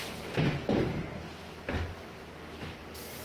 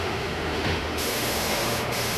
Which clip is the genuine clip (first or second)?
first